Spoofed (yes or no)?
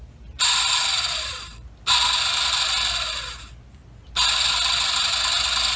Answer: no